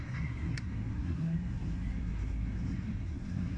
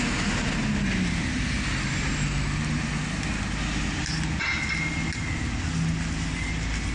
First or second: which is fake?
first